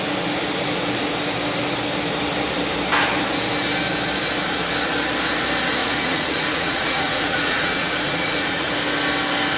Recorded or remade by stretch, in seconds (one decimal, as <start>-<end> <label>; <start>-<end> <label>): 0.0-5.8 recorded; 5.8-8.8 remade; 8.8-9.6 recorded